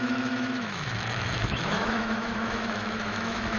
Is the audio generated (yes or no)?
yes